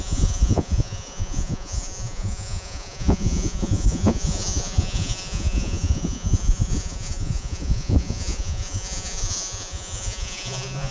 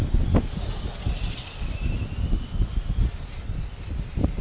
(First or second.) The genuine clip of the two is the second